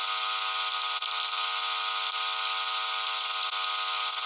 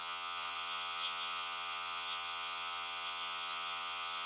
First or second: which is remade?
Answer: second